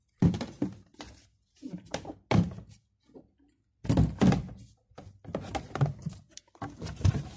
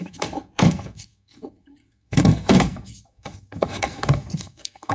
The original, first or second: first